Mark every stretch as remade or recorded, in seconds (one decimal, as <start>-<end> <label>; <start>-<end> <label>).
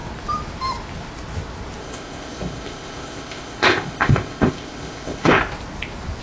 0.0-1.8 recorded; 1.8-5.4 remade; 5.4-6.2 recorded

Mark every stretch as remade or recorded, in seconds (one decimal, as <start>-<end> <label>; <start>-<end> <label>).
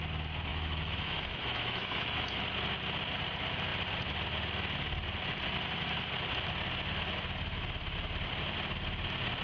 0.0-0.5 recorded; 0.5-2.4 remade; 2.4-9.4 recorded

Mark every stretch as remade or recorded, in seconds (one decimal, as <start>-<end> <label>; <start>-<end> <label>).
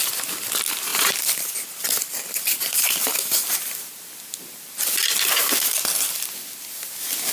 0.0-7.3 recorded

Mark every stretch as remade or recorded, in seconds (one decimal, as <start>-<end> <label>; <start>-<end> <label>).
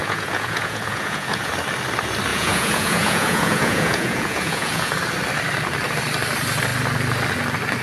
0.0-1.5 remade; 1.5-2.3 recorded; 2.3-4.9 remade; 4.9-7.8 recorded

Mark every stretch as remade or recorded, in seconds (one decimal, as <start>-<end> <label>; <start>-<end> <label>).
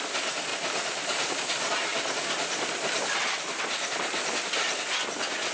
0.0-0.5 recorded; 0.5-1.3 remade; 1.3-5.5 recorded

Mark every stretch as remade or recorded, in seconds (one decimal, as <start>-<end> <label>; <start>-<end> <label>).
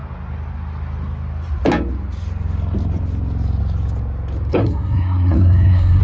0.0-4.5 recorded; 4.5-6.0 remade